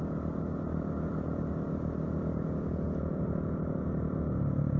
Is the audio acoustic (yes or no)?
yes